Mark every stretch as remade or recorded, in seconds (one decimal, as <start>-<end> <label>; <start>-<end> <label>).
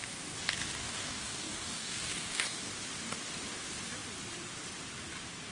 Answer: 0.0-0.8 recorded; 0.8-2.7 remade; 2.7-5.5 recorded